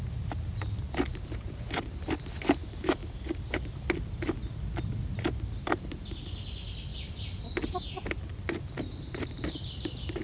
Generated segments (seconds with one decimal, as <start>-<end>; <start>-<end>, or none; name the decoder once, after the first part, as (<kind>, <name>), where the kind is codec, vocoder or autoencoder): 1.1-1.7 (vocoder, BigVGAN v2); 6.9-7.4